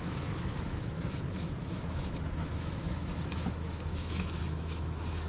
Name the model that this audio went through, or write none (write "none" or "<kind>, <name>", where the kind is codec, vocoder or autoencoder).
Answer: autoencoder, DAC-VAE